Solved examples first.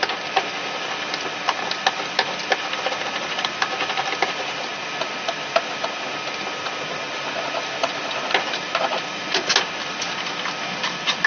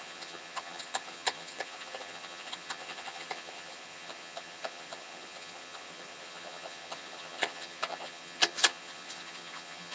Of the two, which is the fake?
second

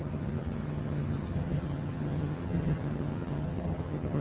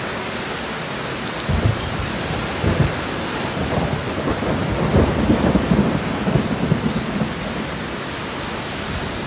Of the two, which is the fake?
first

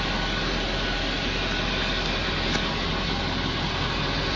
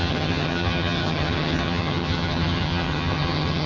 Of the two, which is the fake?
second